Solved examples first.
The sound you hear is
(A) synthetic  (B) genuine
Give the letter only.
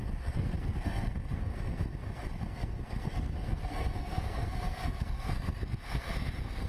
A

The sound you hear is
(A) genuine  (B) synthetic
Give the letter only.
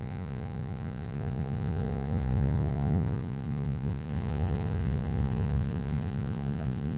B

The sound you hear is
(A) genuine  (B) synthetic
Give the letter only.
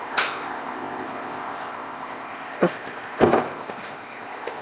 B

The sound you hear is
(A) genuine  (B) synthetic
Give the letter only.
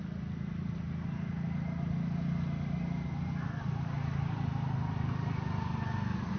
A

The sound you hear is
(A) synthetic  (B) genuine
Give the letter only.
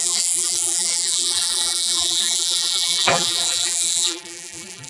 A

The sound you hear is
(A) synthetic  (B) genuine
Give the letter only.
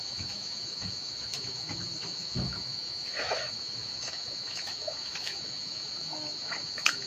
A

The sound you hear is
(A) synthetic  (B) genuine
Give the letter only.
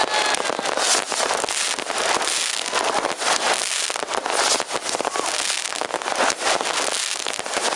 B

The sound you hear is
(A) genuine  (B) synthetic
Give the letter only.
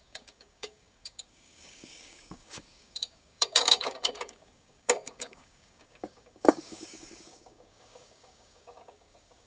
B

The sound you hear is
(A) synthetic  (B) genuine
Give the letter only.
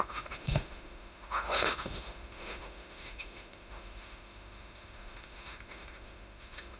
A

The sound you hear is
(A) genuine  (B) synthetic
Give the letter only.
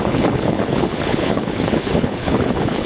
B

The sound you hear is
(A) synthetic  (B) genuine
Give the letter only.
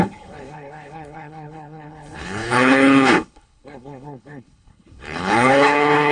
A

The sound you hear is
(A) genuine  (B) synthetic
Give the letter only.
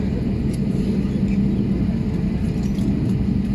A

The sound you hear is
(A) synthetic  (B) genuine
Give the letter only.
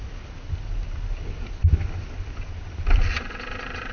B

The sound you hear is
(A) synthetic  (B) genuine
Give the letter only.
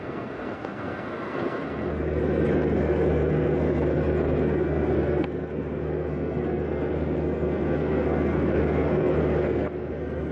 A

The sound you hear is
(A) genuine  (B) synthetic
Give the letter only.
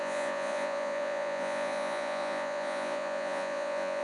B